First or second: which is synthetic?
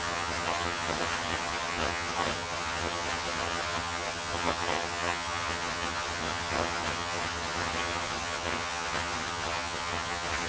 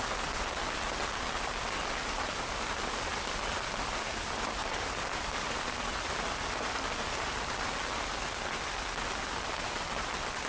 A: first